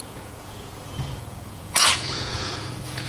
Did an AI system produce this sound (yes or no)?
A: yes